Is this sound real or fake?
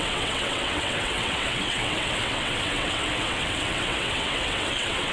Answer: fake